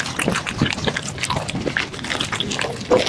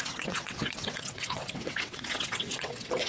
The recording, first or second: first